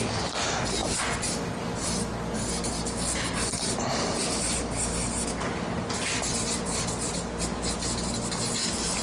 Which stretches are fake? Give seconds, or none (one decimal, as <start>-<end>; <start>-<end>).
none